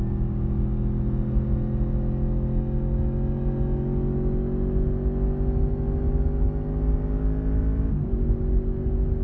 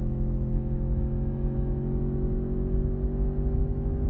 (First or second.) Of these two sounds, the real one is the first